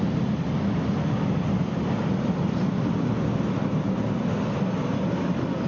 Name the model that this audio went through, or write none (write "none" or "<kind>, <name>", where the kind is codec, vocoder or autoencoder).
none